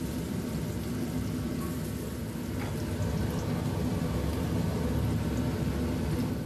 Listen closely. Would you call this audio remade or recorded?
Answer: recorded